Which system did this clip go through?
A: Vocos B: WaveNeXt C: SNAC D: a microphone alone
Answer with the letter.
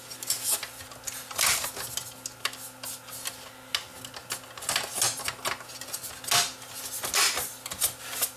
D